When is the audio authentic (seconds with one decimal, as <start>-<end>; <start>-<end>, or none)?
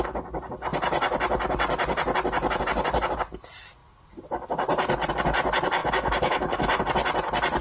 0.0-5.8; 6.8-7.6